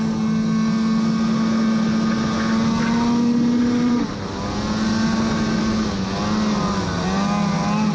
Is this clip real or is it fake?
real